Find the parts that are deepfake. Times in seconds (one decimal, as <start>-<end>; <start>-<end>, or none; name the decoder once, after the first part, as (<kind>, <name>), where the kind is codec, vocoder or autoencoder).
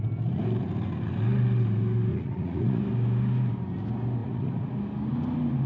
2.1-2.8 (vocoder, Vocos); 4.2-4.7